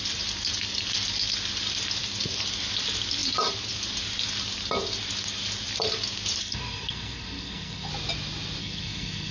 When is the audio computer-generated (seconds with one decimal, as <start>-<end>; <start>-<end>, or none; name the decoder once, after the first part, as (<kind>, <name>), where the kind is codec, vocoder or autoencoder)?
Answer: 6.4-7.9 (codec, SNAC); 8.6-9.3